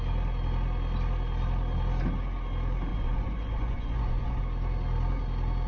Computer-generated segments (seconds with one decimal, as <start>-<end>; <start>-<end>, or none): 2.9-4.4